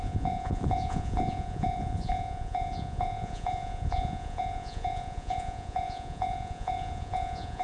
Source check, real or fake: fake